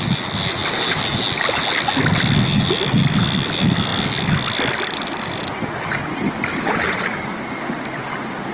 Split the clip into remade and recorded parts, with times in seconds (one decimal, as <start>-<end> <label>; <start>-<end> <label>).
0.0-6.5 recorded; 6.5-7.1 remade; 7.1-8.5 recorded